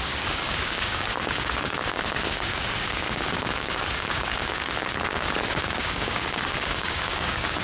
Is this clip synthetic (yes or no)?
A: yes